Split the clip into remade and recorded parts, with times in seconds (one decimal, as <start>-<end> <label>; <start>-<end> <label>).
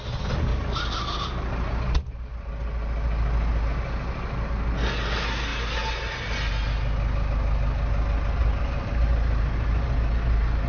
0.0-0.5 recorded; 0.5-2.5 remade; 2.5-8.4 recorded; 8.4-10.7 remade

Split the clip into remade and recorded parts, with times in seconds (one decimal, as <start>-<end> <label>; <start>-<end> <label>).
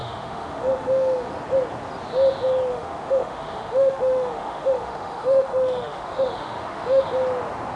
0.0-1.3 remade; 1.3-2.7 recorded; 2.7-7.0 remade; 7.0-7.8 recorded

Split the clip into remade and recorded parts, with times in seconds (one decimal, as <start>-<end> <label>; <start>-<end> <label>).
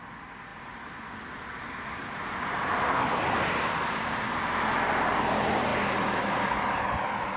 0.0-7.4 recorded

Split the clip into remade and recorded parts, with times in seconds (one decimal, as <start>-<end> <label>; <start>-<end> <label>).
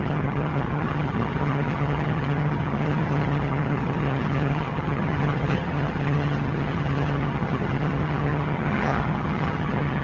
0.0-10.0 remade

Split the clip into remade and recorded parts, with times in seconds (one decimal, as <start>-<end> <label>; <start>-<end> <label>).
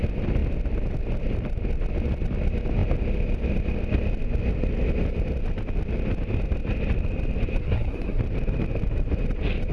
0.0-7.6 recorded; 7.6-8.2 remade; 8.2-9.7 recorded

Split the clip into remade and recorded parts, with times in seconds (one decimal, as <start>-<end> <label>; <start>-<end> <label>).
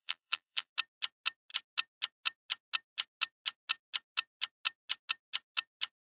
0.0-0.7 remade; 0.7-6.0 recorded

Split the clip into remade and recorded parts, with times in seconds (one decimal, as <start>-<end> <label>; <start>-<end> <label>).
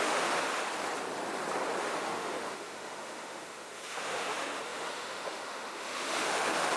0.0-0.5 remade; 0.5-1.8 recorded; 1.8-6.8 remade